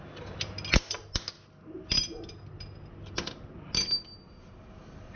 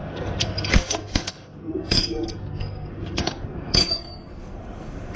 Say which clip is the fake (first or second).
second